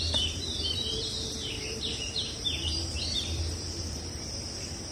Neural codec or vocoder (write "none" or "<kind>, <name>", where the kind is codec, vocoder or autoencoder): vocoder, BigVGAN v2